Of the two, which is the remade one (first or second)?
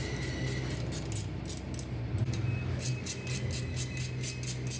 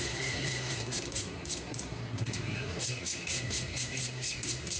second